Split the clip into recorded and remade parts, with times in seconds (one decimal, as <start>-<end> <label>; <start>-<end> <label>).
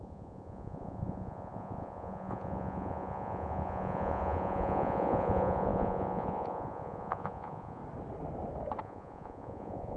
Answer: 0.0-7.8 remade; 7.8-8.8 recorded; 8.8-10.0 remade